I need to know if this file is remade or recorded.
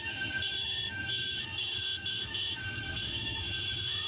remade